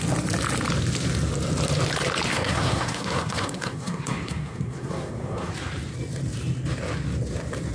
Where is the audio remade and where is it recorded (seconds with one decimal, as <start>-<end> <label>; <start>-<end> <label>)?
0.0-2.3 recorded; 2.3-5.5 remade; 5.5-7.7 recorded